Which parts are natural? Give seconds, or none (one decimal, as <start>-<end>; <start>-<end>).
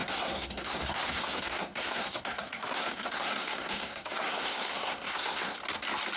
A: 5.6-6.2